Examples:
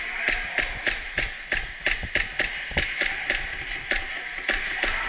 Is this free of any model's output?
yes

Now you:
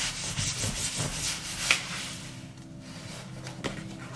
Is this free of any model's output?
yes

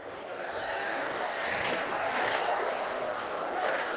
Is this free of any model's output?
no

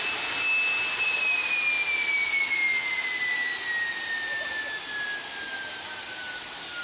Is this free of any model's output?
yes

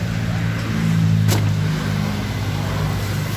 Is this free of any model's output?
yes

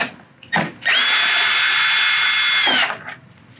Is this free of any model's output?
yes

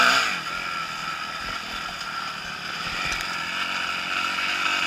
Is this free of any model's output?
yes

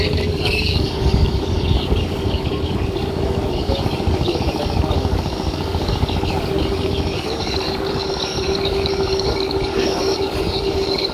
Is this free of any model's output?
no